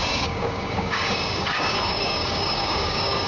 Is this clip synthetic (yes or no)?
yes